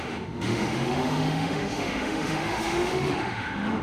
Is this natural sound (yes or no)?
no